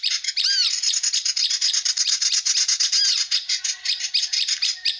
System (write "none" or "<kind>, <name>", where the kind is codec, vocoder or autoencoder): none